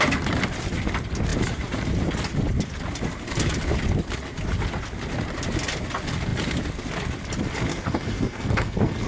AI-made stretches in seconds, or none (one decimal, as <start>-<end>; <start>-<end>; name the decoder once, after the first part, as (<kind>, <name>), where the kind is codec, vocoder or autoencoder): 7.7-9.1 (codec, SNAC)